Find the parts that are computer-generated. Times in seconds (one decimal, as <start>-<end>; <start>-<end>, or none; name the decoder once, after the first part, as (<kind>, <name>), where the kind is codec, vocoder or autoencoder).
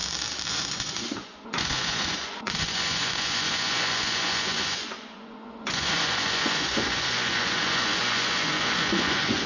0.5-9.5 (vocoder, Vocos)